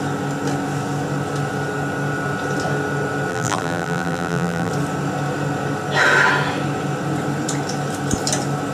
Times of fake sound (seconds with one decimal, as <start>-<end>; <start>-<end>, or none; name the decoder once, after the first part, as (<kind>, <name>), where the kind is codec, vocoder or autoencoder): 3.3-4.7 (vocoder, BigVGAN v2)